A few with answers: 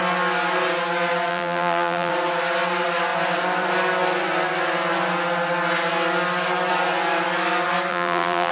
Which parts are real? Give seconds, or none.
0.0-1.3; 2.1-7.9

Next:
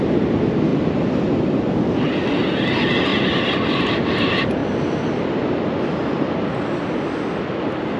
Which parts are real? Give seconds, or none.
0.0-0.7; 1.7-3.1; 3.9-8.0

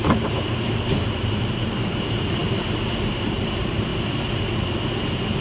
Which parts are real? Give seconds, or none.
2.4-3.1; 3.9-5.4

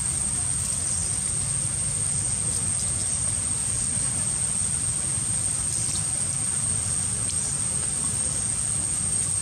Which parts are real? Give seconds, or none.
0.0-9.4

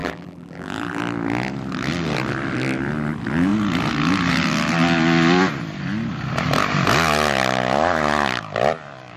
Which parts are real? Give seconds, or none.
1.0-9.2

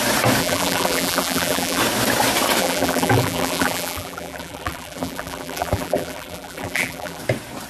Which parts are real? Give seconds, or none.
0.0-0.4; 1.8-2.6; 7.2-7.7

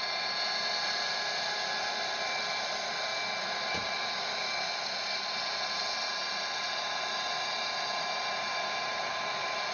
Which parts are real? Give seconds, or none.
0.0-9.7